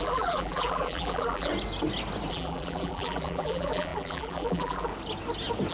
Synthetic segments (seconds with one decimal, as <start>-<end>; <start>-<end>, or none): 0.0-1.5; 2.3-4.9